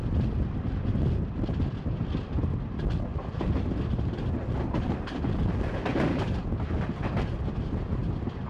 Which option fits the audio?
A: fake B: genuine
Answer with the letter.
B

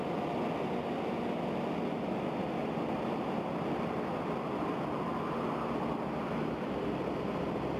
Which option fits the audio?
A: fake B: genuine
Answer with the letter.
B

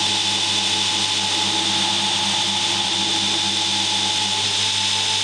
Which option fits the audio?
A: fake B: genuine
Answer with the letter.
B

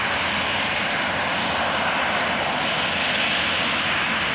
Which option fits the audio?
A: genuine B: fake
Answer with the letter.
A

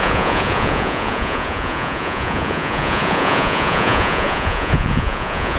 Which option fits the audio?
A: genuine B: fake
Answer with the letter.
B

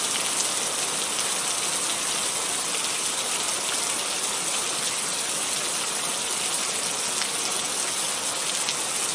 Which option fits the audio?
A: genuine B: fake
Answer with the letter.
A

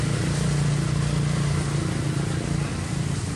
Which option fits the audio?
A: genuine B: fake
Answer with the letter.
A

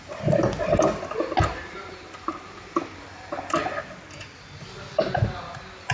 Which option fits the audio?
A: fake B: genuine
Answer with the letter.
B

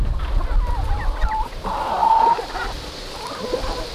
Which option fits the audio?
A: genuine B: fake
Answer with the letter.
A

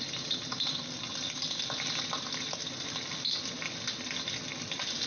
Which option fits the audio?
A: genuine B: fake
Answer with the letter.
A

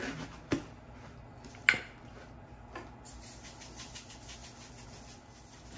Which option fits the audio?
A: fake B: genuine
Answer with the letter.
B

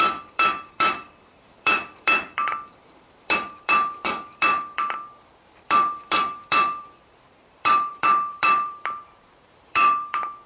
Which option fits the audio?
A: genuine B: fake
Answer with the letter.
B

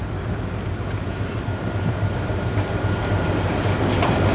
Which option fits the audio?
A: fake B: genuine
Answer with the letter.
B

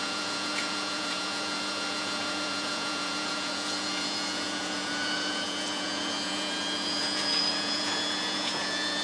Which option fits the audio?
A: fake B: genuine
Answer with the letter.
A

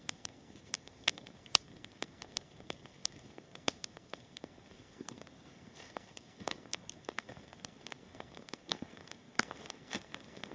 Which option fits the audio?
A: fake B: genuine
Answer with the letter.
A